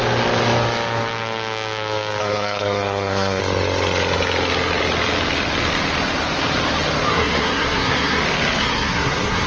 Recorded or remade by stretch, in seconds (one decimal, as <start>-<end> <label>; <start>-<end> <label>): 0.0-2.2 recorded; 2.2-3.4 remade; 3.4-7.1 recorded; 7.1-8.2 remade; 8.2-8.6 recorded; 8.6-9.5 remade